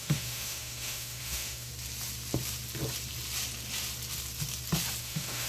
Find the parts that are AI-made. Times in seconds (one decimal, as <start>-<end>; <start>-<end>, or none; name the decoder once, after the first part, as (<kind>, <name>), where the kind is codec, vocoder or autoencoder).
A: 0.0-1.7 (autoencoder, DAC-VAE); 5.0-5.5